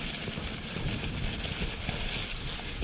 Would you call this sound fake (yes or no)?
no